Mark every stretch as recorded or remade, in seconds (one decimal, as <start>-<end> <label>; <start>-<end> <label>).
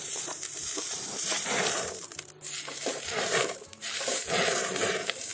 0.0-5.3 remade